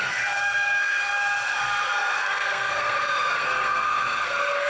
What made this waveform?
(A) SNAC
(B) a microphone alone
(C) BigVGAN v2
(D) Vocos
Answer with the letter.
A